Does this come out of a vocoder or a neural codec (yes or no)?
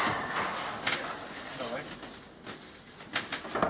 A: no